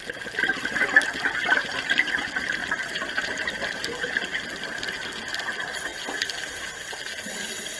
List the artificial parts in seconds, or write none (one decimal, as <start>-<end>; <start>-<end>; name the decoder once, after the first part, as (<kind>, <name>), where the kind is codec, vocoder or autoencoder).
none